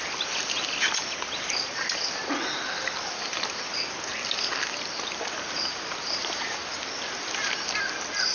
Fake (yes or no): no